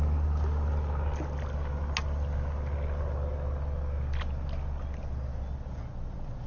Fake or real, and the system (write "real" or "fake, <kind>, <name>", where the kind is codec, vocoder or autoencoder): real